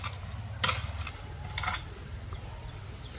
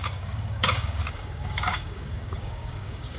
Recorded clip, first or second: first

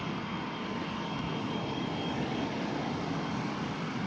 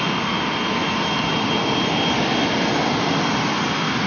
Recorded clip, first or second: second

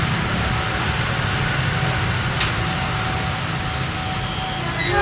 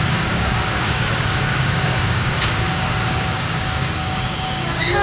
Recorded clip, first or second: first